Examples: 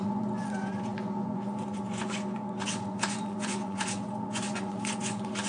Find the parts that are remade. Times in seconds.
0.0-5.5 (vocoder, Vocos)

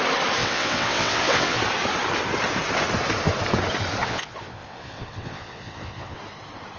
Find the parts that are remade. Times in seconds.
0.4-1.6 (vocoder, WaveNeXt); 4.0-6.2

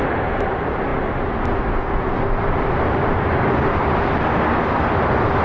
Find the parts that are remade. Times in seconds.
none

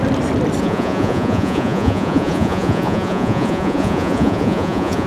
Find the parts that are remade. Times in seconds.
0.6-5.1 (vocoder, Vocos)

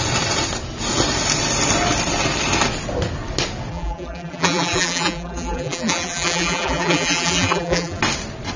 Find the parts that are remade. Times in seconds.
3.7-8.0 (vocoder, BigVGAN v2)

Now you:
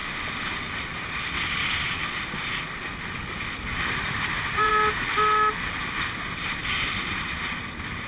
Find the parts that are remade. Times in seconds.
0.0-1.8 (vocoder, BigVGAN v2); 3.7-4.7; 6.6-7.3

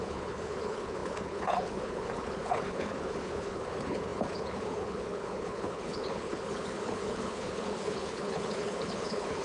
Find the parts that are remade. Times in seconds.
0.0-9.4 (codec, HILCodec)